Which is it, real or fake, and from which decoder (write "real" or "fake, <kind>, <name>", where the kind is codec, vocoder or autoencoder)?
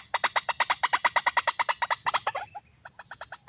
real